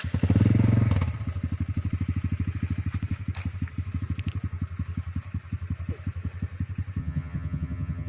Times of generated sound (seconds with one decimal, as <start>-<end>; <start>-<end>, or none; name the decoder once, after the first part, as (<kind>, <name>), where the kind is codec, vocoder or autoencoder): 7.0-8.1 (vocoder, HiFi-GAN)